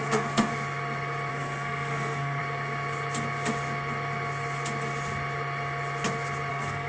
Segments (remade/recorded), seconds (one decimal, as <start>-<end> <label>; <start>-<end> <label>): 0.0-0.5 remade; 0.5-1.3 recorded; 1.3-2.4 remade; 2.4-6.5 recorded; 6.5-6.9 remade

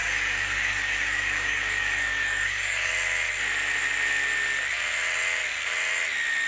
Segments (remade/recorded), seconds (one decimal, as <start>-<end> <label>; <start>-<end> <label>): 0.0-2.9 remade; 2.9-6.5 recorded